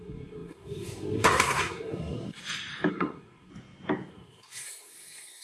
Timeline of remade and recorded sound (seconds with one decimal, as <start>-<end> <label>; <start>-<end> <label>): 0.0-2.4 remade; 2.4-2.9 recorded; 2.9-3.5 remade; 3.5-4.1 recorded; 4.1-5.4 remade